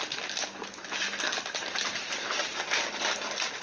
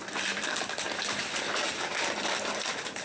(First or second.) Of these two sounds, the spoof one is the second